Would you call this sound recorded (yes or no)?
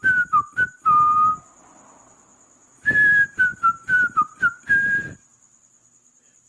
yes